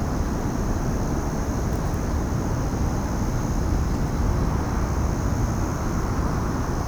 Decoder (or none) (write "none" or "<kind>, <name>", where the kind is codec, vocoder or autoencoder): none